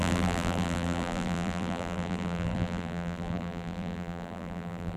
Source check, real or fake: fake